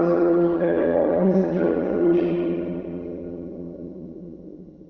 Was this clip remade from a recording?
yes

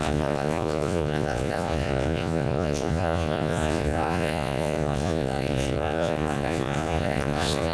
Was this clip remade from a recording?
yes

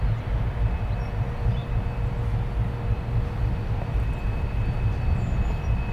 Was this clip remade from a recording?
no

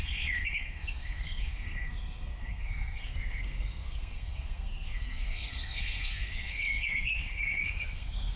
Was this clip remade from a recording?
yes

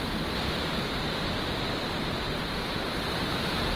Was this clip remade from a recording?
yes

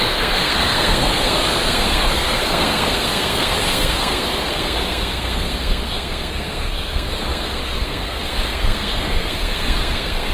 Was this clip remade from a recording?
yes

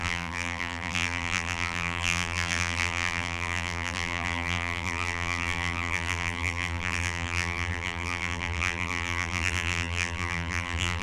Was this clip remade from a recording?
yes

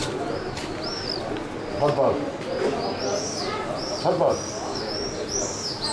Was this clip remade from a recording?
no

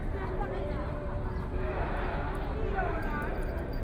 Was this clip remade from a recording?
no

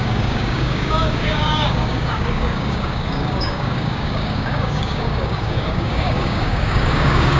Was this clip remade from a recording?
yes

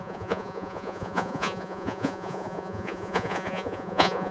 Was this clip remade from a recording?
yes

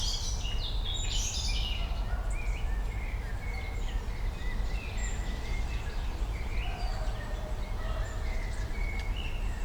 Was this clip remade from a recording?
no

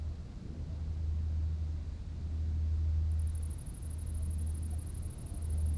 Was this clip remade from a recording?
no